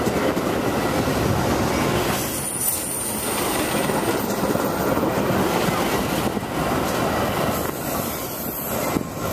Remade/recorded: recorded